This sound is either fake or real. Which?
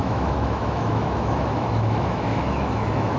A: fake